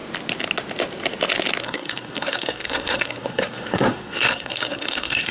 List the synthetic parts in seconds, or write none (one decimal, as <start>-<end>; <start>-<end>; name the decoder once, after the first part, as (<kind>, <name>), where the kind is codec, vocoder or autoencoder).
1.6-5.3 (codec, SNAC)